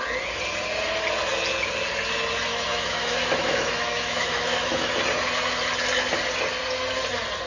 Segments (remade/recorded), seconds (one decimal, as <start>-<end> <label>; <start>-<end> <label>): 0.0-2.5 recorded; 2.5-4.9 remade; 4.9-7.5 recorded